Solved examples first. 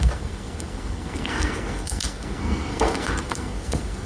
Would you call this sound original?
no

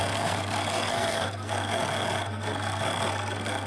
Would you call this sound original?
no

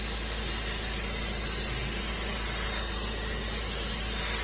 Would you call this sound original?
yes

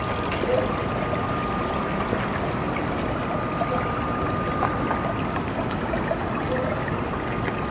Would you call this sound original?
yes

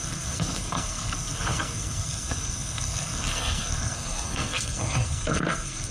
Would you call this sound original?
no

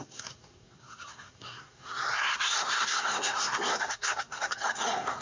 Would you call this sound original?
no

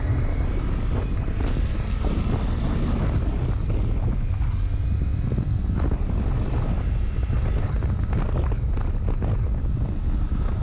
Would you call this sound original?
yes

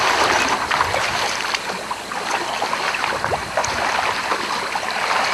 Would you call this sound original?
yes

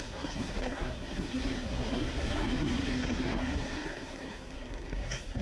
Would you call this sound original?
no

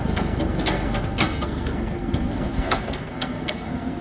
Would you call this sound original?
no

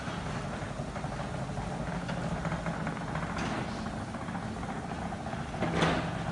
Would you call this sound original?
yes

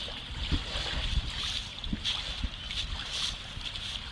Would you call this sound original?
yes